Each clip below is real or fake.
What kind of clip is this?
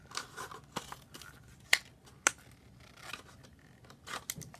real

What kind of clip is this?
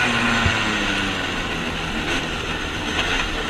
real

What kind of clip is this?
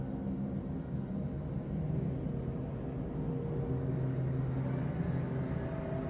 real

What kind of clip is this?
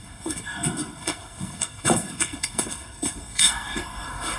fake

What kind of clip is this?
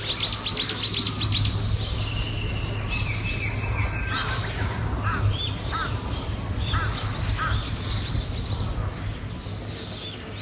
real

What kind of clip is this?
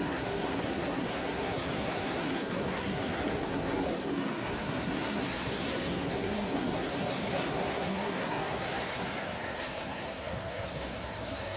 fake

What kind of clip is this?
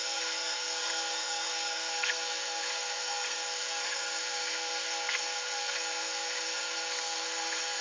fake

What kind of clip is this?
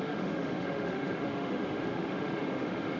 fake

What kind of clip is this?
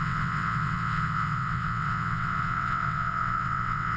fake